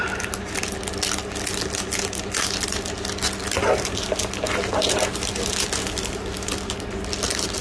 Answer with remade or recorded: recorded